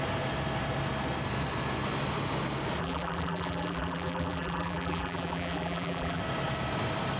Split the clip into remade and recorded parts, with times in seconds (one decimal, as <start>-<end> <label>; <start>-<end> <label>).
0.0-2.8 recorded; 2.8-6.2 remade; 6.2-7.2 recorded